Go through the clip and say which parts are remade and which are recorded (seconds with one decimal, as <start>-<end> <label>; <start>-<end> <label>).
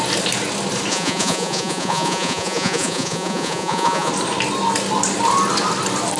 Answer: 0.0-0.9 recorded; 0.9-4.1 remade; 4.1-6.2 recorded